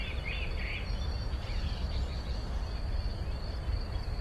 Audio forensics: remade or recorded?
remade